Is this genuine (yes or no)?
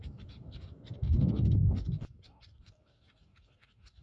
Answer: no